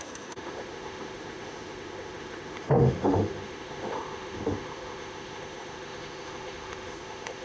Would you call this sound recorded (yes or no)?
no